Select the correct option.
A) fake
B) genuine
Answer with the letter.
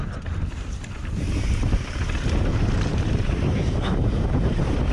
A